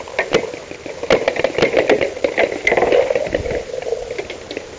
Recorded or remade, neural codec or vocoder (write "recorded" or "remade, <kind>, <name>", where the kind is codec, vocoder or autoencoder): recorded